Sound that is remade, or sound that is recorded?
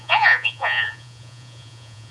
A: remade